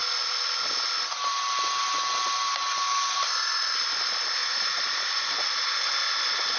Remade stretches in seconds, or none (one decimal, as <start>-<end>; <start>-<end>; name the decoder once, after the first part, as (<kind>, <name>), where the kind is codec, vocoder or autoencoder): 4.4-6.6 (vocoder, Vocos)